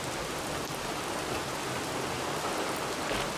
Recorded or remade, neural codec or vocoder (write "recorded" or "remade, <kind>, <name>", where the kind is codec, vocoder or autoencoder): recorded